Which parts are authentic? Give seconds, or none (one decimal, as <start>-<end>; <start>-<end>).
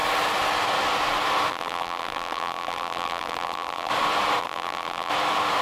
0.0-1.5; 3.9-4.4; 5.1-5.6